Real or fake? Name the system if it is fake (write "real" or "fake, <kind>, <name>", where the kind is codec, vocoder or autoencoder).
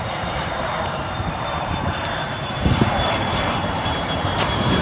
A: fake, vocoder, BigVGAN v2